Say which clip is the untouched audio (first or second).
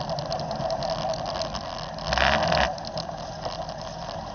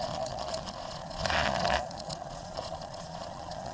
first